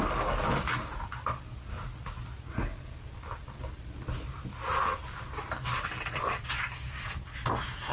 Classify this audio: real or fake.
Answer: real